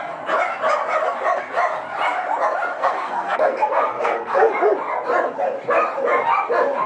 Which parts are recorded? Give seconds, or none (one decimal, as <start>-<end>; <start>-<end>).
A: 0.0-2.7; 4.5-6.9